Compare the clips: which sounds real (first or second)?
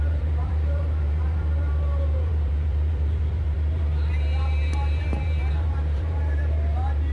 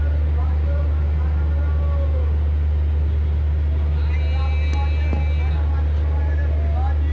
second